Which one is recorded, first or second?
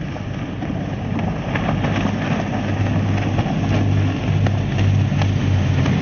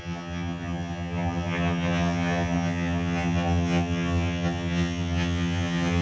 first